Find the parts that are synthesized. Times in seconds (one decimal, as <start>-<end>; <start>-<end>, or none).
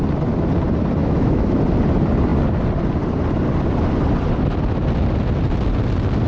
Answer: 1.0-1.6